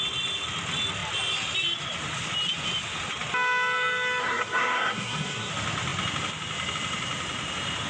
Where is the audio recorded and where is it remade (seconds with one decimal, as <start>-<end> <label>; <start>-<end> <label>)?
0.0-4.2 recorded; 4.2-5.5 remade; 5.5-7.9 recorded